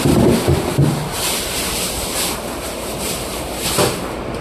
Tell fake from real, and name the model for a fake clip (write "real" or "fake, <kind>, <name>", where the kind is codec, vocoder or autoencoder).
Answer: real